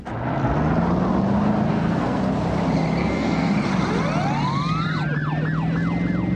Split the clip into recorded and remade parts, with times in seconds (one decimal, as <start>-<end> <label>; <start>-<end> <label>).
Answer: 0.0-1.7 recorded; 1.7-2.2 remade; 2.2-3.0 recorded; 3.0-3.5 remade; 3.5-6.4 recorded